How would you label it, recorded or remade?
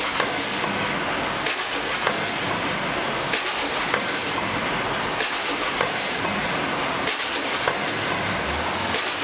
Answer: recorded